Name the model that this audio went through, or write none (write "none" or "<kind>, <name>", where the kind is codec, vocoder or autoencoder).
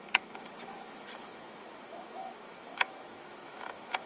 autoencoder, DAC-VAE